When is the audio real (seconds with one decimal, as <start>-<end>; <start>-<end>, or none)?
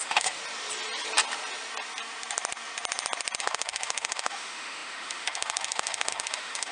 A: 0.4-3.4